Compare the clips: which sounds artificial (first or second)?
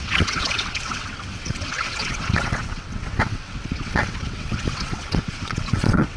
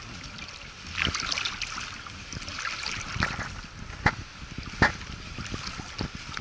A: first